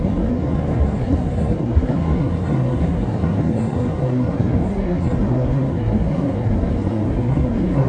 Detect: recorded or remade remade